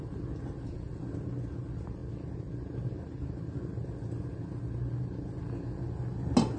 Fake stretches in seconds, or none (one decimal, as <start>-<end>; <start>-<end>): none